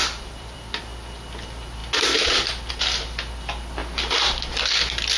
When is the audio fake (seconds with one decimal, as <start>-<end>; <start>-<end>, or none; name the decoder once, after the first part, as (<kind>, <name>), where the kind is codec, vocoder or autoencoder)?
0.0-0.8 (vocoder, BigVGAN v2)